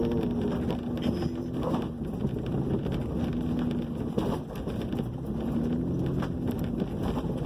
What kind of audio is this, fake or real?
real